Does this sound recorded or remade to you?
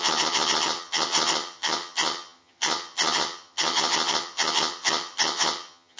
remade